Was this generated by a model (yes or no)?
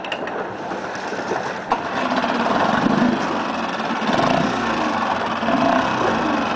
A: no